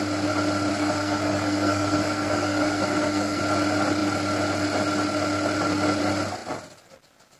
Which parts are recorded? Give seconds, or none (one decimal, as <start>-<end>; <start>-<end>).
0.0-0.7; 3.4-7.4